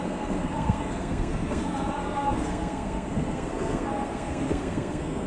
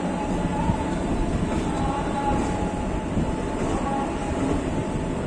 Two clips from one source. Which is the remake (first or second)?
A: first